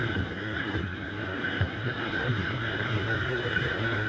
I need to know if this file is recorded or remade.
remade